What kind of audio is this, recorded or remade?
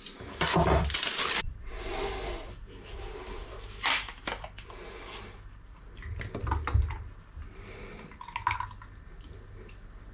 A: recorded